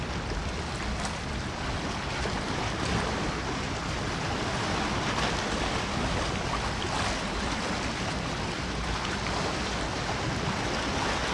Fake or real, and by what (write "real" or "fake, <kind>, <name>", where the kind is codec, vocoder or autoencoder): real